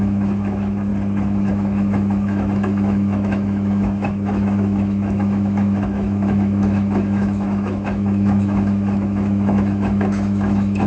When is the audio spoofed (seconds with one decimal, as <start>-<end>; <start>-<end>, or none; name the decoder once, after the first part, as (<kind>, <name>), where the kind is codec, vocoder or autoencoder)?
0.0-0.9 (autoencoder, DAC-VAE); 1.5-10.9